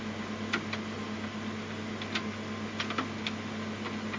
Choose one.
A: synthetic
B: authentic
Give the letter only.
B